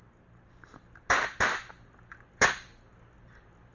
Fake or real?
real